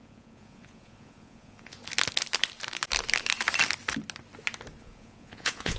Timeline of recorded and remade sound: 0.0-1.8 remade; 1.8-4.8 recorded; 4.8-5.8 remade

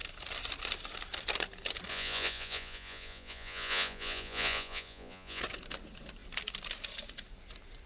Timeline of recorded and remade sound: 0.0-1.9 recorded; 1.9-5.4 remade; 5.4-7.9 recorded

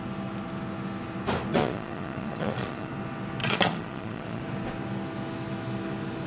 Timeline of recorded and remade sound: 0.0-1.5 recorded; 1.5-2.9 remade; 2.9-3.4 recorded; 3.4-4.4 remade; 4.4-6.3 recorded

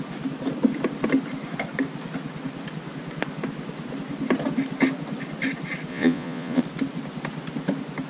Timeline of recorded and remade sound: 0.0-5.9 recorded; 5.9-6.6 remade; 6.6-8.1 recorded

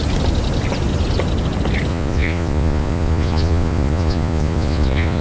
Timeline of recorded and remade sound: 0.0-1.9 recorded; 1.9-5.2 remade

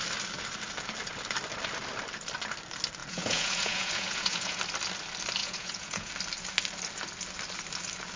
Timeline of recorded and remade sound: 0.0-3.0 recorded; 3.0-4.6 remade; 4.6-5.4 recorded; 5.4-6.1 remade; 6.1-8.2 recorded

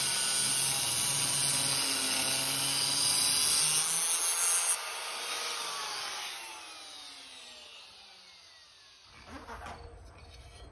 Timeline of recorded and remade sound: 0.0-10.7 recorded

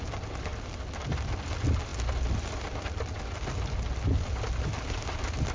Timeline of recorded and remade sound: 0.0-5.5 recorded